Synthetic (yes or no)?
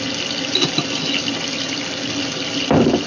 no